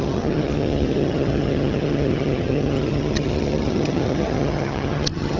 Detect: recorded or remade remade